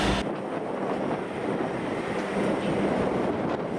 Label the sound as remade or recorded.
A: recorded